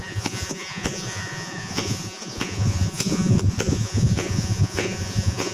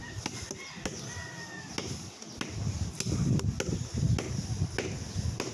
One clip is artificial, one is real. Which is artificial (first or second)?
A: first